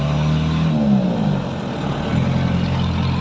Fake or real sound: real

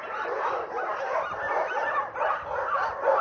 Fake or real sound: real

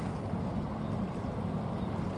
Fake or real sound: real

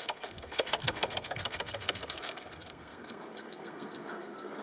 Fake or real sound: fake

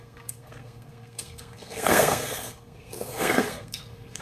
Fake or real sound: fake